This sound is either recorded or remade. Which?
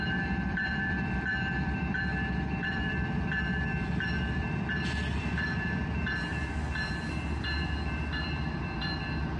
remade